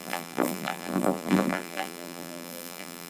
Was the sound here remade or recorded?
remade